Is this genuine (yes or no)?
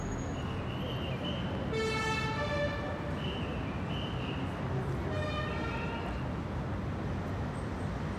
yes